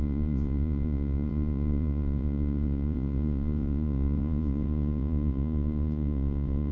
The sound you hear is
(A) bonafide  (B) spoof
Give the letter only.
B